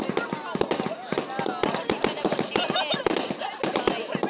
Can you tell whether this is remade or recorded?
recorded